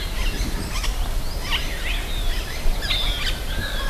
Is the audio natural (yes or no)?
yes